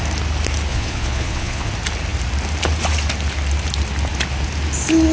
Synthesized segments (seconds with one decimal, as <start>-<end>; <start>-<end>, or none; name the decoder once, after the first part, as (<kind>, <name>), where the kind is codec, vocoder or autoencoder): 0.7-1.7 (vocoder, Vocos)